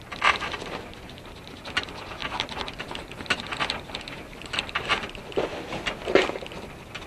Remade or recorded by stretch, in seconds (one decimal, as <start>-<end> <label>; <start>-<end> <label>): 0.0-7.1 recorded